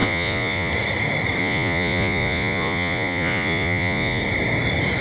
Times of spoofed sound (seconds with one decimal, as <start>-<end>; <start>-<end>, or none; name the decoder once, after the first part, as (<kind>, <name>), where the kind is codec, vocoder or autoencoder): 0.0-0.7 (vocoder, Vocos); 1.4-4.2

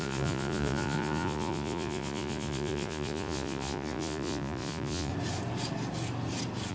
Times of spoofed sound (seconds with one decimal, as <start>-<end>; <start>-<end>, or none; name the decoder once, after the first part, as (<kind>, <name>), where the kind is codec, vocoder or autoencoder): 0.0-5.1 (vocoder, Vocos)

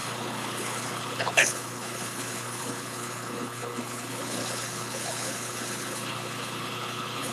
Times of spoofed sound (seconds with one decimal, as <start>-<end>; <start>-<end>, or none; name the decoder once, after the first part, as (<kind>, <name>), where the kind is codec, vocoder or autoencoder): 0.0-7.3 (codec, HILCodec)

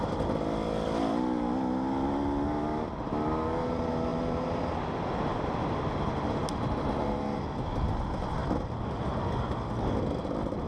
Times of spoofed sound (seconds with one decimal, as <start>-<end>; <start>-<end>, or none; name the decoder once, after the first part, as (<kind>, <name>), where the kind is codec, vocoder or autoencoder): none